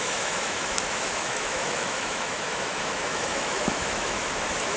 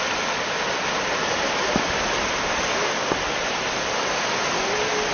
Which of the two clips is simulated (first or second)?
first